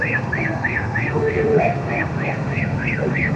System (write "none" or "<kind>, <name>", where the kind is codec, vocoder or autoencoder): autoencoder, DAC-VAE